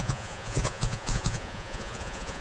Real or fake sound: fake